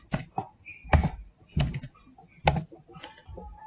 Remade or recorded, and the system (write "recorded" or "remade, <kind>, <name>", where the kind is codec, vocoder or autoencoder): recorded